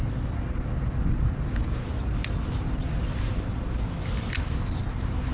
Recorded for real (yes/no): yes